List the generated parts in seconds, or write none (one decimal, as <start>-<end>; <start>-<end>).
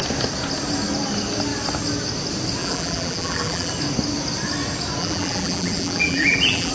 2.6-3.7; 5.0-6.7